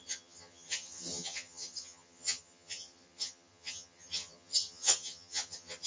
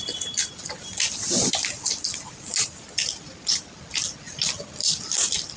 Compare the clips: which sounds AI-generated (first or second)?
first